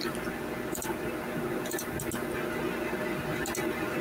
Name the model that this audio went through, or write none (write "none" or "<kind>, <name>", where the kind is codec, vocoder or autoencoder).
none